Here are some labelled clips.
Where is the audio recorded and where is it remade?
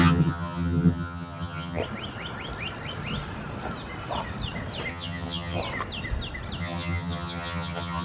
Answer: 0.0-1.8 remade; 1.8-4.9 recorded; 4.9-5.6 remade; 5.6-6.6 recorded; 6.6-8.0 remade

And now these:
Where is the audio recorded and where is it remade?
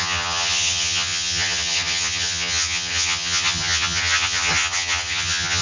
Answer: 0.0-5.6 remade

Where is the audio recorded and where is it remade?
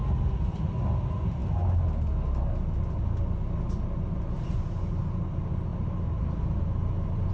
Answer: 0.0-7.3 recorded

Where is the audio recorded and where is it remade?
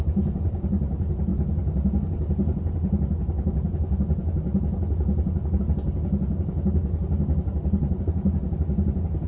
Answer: 0.0-9.3 recorded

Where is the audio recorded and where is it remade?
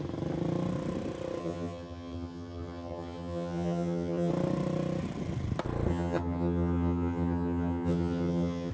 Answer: 0.0-1.4 recorded; 1.4-4.3 remade; 4.3-5.9 recorded; 5.9-8.7 remade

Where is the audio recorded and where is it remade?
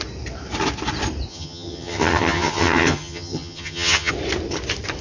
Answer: 0.0-1.3 recorded; 1.3-4.1 remade; 4.1-5.0 recorded